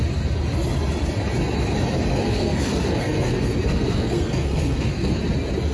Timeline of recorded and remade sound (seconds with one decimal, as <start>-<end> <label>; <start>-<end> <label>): 0.0-2.1 recorded; 2.1-5.2 remade; 5.2-5.7 recorded